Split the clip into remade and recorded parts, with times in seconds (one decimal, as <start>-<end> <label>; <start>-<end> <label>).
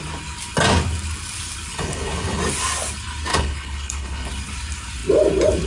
0.0-1.7 recorded; 1.7-2.4 remade; 2.4-3.3 recorded; 3.3-4.3 remade; 4.3-5.7 recorded